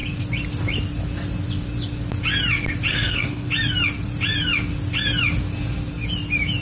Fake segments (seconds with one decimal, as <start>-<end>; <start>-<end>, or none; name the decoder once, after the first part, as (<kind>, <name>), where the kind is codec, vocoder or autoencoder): 2.9-3.5 (codec, SNAC)

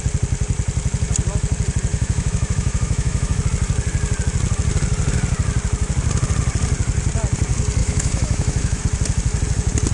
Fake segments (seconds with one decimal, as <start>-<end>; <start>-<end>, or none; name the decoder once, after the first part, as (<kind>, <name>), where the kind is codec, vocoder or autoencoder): 1.9-3.4 (autoencoder, DAC-VAE); 7.8-8.8

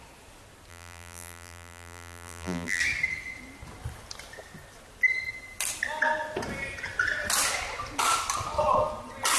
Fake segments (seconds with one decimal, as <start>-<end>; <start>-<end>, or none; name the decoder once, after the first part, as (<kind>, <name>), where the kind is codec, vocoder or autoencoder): 0.7-2.8 (vocoder, BigVGAN v2)

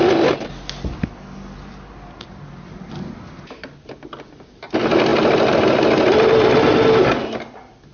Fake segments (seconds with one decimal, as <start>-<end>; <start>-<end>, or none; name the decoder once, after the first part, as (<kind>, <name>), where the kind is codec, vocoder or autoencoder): none

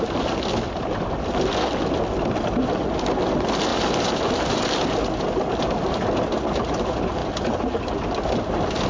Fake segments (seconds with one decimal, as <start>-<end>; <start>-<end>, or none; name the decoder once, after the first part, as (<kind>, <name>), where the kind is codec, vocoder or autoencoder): none

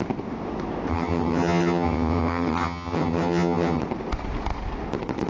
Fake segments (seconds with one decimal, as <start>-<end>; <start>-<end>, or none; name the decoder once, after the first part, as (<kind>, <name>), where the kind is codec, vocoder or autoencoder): 0.9-3.8 (vocoder, HiFi-GAN)